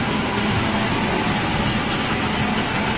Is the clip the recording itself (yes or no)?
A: yes